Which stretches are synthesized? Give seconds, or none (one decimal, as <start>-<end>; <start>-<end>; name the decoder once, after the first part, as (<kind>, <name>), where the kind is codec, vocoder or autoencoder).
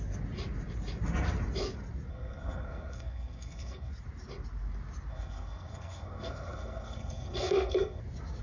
2.1-3.9 (codec, SNAC); 5.1-8.0